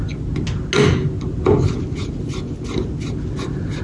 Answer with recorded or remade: recorded